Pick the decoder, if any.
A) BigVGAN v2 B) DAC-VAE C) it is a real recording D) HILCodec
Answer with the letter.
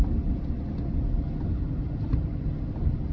C